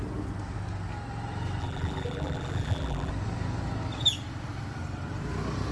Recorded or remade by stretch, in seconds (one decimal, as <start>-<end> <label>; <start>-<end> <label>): 0.0-1.6 recorded; 1.6-3.1 remade; 3.1-5.7 recorded